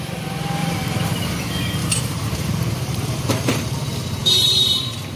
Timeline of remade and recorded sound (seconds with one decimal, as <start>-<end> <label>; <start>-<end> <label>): 0.0-0.6 recorded; 0.6-1.1 remade; 1.1-1.8 recorded; 1.8-5.2 remade